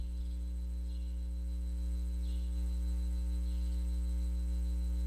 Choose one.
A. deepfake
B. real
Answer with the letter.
B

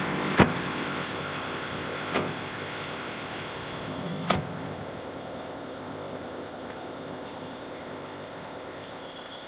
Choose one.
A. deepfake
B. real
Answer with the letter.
A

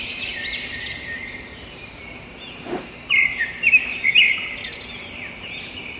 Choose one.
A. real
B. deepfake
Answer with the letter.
B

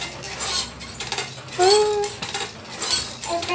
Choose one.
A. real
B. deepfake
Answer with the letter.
A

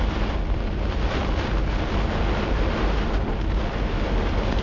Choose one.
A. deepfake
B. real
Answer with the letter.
B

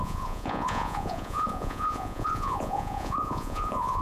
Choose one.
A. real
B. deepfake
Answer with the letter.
B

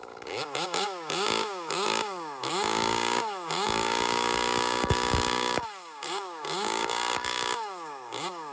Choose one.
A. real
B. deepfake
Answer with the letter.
B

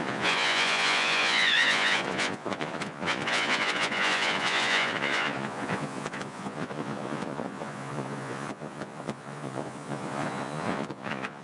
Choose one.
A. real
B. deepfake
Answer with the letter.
B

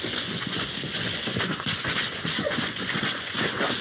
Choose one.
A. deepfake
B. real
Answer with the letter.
A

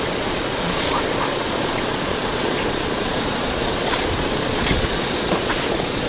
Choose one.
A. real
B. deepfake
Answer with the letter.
B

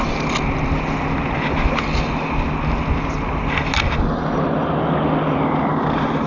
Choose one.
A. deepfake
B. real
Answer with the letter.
B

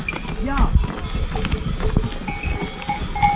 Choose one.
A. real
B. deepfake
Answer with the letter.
A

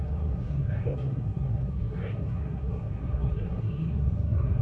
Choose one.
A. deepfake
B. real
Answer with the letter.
A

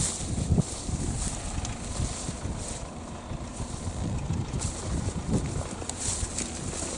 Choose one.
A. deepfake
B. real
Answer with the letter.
B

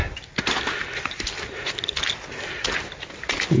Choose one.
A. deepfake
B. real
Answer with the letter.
B